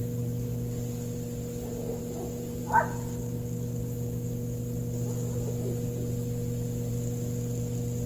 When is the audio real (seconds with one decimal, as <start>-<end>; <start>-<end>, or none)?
0.0-8.1